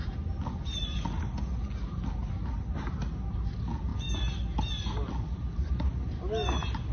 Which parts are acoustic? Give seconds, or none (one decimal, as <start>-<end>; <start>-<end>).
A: 0.0-6.9